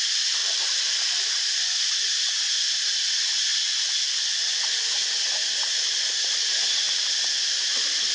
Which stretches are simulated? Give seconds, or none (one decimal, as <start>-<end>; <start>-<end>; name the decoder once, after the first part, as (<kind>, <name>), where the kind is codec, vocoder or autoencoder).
0.4-1.4 (vocoder, BigVGAN v2); 3.5-4.2; 5.7-7.1